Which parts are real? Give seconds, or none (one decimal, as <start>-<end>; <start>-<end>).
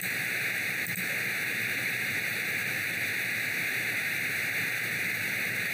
none